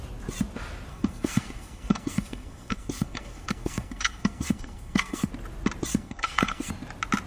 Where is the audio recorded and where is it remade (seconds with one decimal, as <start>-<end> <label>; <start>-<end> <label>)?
0.0-0.9 recorded; 0.9-5.3 remade; 5.3-5.9 recorded; 5.9-6.7 remade; 6.7-7.3 recorded